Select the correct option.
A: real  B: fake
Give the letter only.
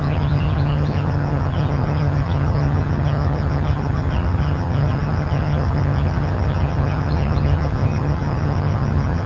B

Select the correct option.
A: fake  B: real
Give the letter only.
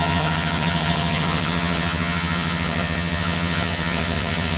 A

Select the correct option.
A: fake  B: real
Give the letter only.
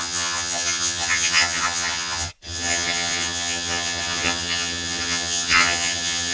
A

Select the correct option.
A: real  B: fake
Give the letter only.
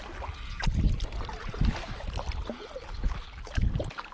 A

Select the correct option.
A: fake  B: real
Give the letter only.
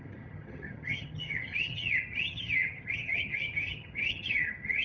A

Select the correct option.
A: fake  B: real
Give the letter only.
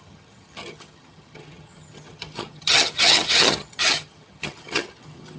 A